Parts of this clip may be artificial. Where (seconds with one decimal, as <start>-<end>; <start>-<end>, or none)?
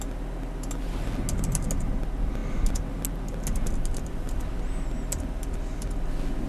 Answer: none